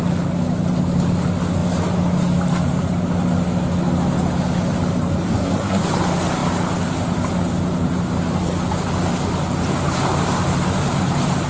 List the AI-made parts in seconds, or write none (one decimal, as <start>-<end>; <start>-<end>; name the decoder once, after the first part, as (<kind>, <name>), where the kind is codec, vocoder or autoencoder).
5.3-5.8 (codec, SNAC)